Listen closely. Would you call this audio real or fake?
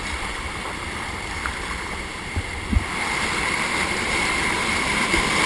fake